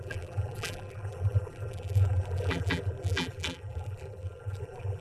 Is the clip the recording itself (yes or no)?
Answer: no